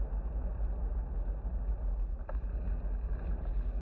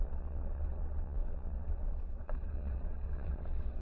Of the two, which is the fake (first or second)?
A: second